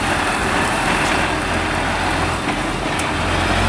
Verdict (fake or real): real